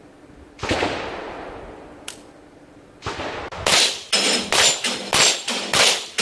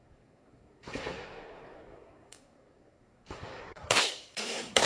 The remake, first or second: second